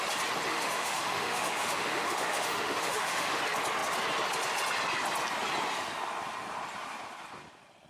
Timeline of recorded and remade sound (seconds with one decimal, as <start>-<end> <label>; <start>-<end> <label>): 0.0-0.5 recorded; 0.5-3.4 remade; 3.4-7.9 recorded